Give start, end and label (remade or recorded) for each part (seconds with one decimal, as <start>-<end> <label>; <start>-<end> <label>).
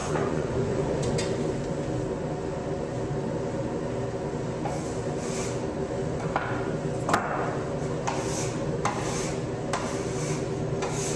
0.0-1.1 remade; 1.1-11.2 recorded